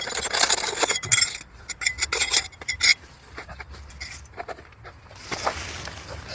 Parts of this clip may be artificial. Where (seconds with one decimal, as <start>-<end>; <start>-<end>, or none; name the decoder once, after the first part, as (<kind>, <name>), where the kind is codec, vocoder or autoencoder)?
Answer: none